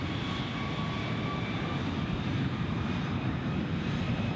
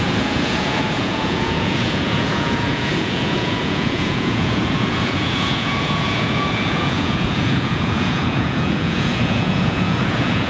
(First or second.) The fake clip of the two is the second